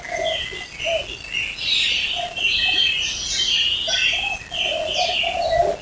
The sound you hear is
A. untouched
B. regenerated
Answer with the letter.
A